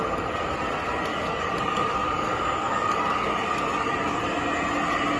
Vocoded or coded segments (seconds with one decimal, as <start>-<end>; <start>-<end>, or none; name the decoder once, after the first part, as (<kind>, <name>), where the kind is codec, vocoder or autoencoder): 1.1-4.2 (codec, DAC)